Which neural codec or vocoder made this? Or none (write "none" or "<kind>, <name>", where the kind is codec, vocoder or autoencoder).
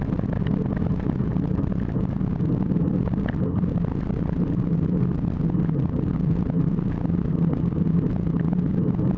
none